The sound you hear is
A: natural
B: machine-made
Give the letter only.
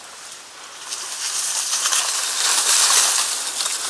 A